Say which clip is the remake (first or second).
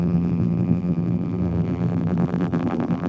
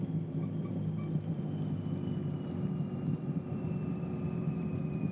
first